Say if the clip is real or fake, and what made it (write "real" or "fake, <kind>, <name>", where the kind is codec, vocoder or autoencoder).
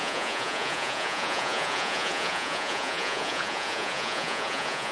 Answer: fake, vocoder, Vocos